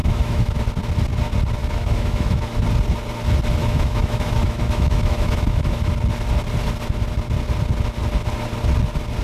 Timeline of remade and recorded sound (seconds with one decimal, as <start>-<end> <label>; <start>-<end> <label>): 0.0-0.6 remade; 0.6-1.6 recorded; 1.6-2.6 remade; 2.6-3.6 recorded; 3.6-5.9 remade; 5.9-9.2 recorded